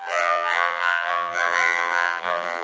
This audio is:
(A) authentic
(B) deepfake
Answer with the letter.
B